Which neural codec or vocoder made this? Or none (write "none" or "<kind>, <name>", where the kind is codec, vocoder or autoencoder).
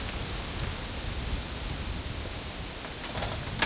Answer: none